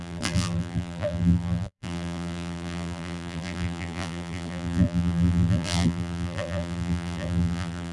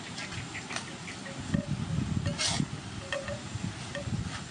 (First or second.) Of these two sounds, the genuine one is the second